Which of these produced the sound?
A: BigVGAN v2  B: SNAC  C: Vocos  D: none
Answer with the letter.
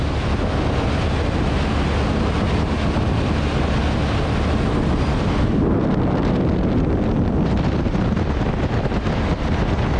D